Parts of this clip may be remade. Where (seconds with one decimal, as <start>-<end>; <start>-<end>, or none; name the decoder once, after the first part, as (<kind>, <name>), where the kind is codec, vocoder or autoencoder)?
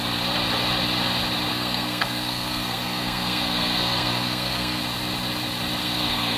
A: 1.5-4.8 (codec, SNAC); 5.8-6.4